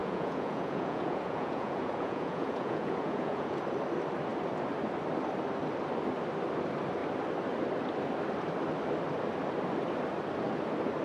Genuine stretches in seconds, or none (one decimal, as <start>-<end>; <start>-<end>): 3.6-11.0